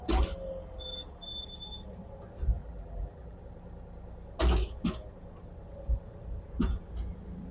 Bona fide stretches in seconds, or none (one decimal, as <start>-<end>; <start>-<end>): 0.0-2.6; 3.4-7.5